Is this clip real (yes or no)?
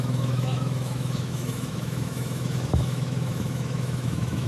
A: no